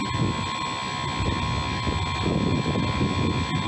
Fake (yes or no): no